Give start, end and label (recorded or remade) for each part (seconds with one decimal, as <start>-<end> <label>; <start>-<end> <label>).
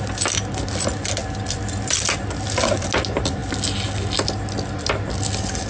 0.0-5.7 recorded